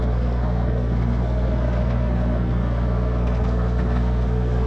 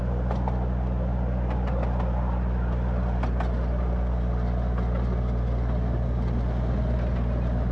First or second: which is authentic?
second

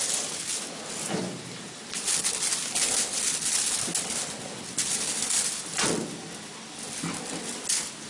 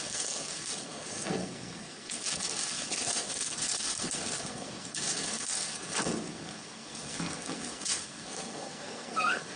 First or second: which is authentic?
first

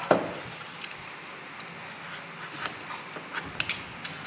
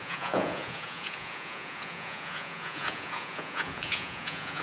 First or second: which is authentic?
first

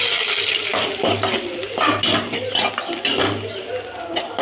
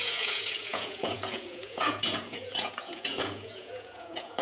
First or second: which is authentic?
first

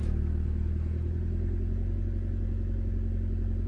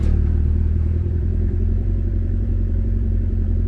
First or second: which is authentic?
first